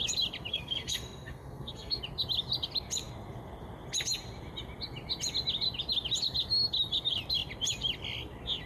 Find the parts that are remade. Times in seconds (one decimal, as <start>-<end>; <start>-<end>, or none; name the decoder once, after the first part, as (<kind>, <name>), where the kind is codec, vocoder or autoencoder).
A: 0.5-2.0 (codec, SNAC)